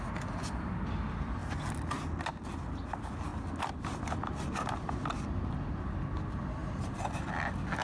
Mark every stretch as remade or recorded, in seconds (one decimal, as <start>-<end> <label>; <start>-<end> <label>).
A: 0.0-7.8 recorded